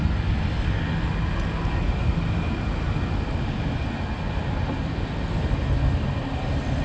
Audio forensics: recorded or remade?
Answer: recorded